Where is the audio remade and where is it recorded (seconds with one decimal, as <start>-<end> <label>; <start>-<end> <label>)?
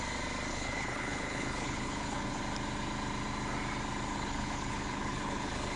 0.0-0.5 recorded; 0.5-2.4 remade; 2.4-4.1 recorded; 4.1-5.8 remade